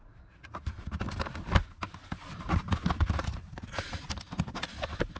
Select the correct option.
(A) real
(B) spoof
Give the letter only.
A